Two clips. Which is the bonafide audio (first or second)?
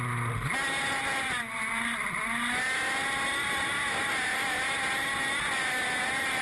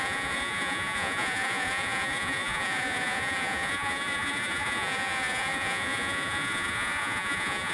first